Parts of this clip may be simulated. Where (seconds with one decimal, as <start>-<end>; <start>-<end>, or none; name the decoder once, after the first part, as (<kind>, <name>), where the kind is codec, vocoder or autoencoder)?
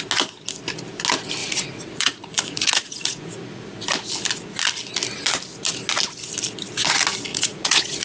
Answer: 1.4-3.3 (vocoder, Vocos); 7.3-8.0